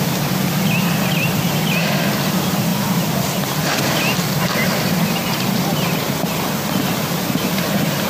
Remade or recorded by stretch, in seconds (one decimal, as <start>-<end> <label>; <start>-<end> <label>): 0.0-8.1 recorded